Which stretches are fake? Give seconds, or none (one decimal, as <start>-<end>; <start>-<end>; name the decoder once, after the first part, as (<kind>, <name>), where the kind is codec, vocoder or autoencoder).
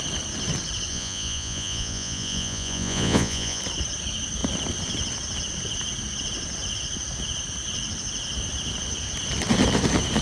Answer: 0.9-3.6 (vocoder, Vocos)